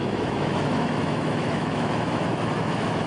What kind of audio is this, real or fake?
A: fake